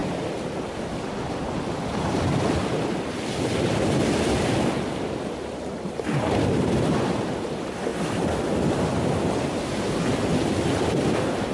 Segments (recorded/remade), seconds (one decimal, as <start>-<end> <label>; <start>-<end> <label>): 0.0-11.5 recorded